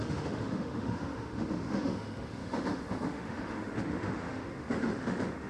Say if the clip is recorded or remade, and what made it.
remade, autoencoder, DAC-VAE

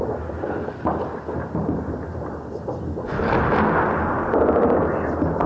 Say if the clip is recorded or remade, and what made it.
recorded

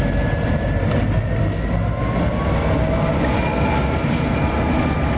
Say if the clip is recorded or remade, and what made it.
recorded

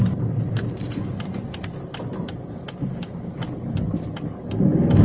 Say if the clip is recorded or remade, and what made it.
recorded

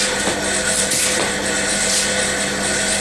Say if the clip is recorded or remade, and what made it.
recorded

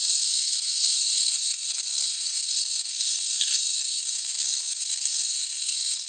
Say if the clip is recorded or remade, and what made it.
remade, codec, SNAC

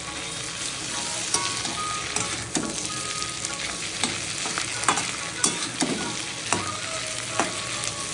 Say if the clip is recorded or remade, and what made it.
recorded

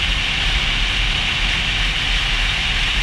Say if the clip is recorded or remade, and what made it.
recorded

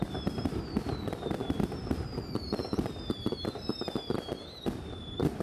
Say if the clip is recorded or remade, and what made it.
remade, vocoder, BigVGAN v2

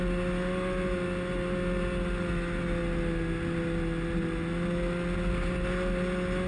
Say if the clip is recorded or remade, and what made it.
recorded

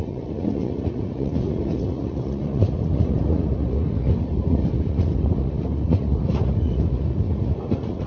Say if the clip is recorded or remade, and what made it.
remade, vocoder, Vocos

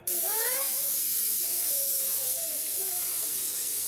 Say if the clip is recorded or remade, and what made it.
remade, codec, SNAC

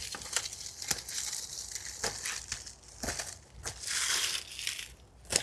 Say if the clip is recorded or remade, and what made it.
recorded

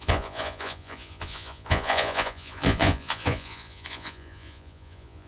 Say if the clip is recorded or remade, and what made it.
remade, vocoder, Vocos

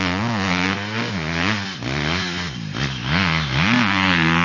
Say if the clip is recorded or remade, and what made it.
recorded